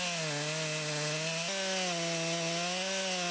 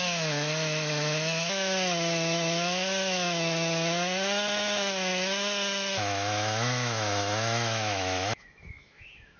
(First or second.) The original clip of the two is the first